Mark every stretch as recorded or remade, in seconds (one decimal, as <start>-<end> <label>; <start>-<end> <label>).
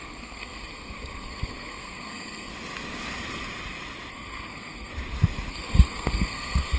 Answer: 0.0-2.5 remade; 2.5-4.1 recorded; 4.1-4.9 remade; 4.9-5.5 recorded; 5.5-6.8 remade